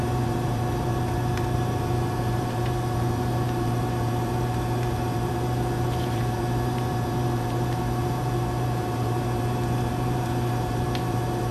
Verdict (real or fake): fake